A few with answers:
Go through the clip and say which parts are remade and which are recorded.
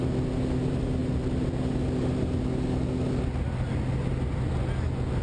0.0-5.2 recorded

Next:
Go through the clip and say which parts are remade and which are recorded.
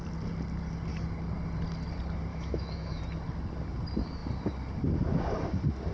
0.0-2.3 recorded; 2.3-3.0 remade; 3.0-5.9 recorded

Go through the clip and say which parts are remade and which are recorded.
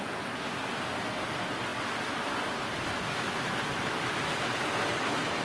0.0-5.4 recorded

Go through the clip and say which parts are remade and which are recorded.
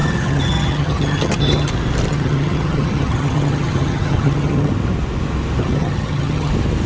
0.0-1.7 remade; 1.7-2.1 recorded; 2.1-4.7 remade; 4.7-5.6 recorded; 5.6-6.5 remade; 6.5-6.9 recorded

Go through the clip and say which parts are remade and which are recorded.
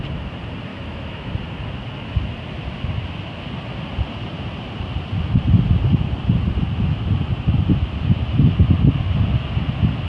0.0-0.7 recorded; 0.7-1.3 remade; 1.3-10.1 recorded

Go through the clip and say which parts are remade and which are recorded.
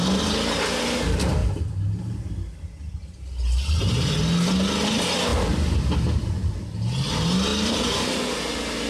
0.0-1.4 recorded; 1.4-2.0 remade; 2.0-5.3 recorded; 5.3-6.6 remade; 6.6-7.5 recorded; 7.5-8.9 remade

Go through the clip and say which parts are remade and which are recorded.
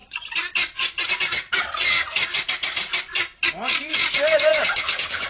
0.0-4.5 recorded; 4.5-5.3 remade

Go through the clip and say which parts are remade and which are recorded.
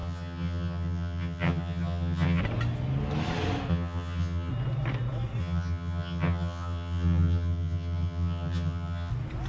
0.0-2.4 remade; 2.4-3.7 recorded; 3.7-4.5 remade; 4.5-5.4 recorded; 5.4-9.1 remade; 9.1-9.5 recorded